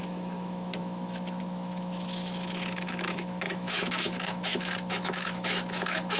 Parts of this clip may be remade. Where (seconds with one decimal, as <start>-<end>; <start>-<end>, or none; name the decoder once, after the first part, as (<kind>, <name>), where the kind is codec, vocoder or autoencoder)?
0.0-6.2 (autoencoder, DAC-VAE)